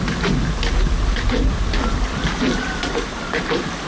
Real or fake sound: real